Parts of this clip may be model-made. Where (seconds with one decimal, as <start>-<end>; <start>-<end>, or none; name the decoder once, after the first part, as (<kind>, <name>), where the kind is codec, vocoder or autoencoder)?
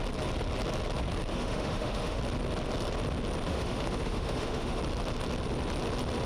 1.3-2.2 (autoencoder, DAC-VAE); 3.5-4.8